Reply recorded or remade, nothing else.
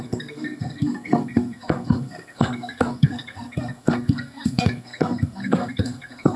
remade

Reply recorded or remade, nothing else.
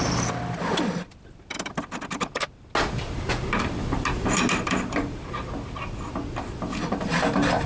recorded